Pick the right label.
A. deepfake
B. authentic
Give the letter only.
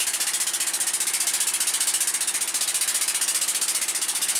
B